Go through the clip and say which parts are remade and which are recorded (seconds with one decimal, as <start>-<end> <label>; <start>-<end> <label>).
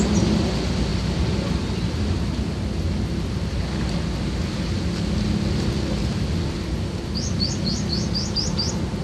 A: 0.0-9.0 recorded